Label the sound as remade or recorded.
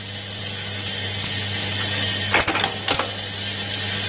recorded